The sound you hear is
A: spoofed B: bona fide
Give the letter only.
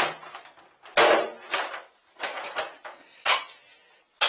B